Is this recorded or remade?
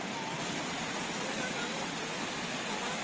recorded